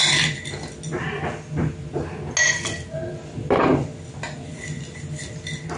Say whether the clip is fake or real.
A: real